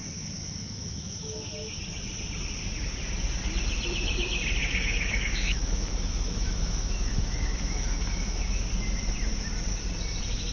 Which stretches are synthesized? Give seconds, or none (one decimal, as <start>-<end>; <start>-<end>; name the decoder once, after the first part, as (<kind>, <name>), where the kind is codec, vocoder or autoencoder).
0.0-1.8 (autoencoder, DAC-VAE); 4.6-8.7